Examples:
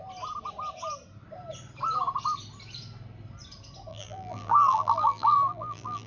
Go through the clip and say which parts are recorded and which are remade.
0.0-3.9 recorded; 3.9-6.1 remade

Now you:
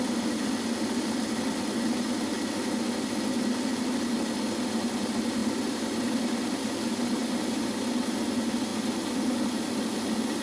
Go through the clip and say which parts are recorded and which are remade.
0.0-10.4 recorded

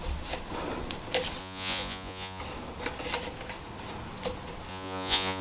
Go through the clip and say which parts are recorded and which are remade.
0.0-1.4 recorded; 1.4-2.4 remade; 2.4-4.7 recorded; 4.7-5.4 remade

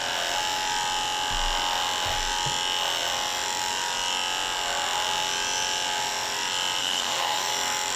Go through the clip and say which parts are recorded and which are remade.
0.0-6.8 recorded; 6.8-7.5 remade; 7.5-8.0 recorded

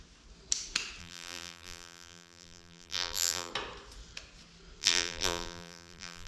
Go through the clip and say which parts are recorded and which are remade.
0.0-1.0 recorded; 1.0-3.5 remade; 3.5-4.8 recorded; 4.8-6.3 remade

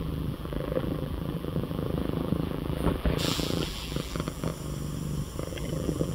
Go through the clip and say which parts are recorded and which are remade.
0.0-4.5 remade; 4.5-5.5 recorded; 5.5-6.1 remade